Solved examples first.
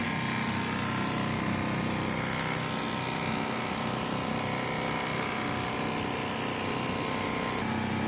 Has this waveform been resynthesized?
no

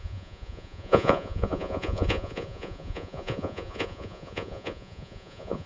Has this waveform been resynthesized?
yes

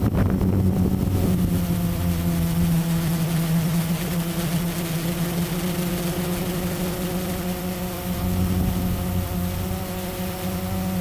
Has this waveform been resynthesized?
no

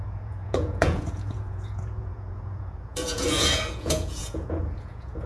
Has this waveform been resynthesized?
yes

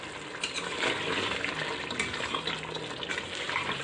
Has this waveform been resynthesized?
no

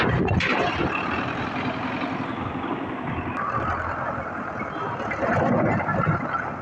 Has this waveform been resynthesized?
no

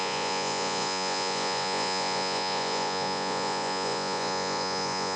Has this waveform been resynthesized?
yes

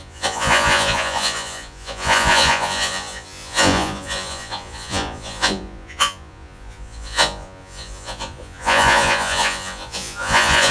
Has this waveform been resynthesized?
yes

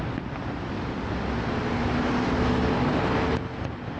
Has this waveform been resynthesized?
no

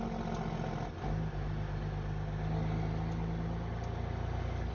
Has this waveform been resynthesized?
no